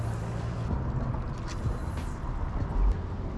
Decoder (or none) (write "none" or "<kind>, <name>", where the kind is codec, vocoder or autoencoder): none